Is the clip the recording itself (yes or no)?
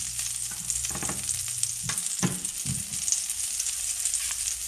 yes